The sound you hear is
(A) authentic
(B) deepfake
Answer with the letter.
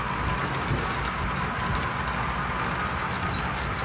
A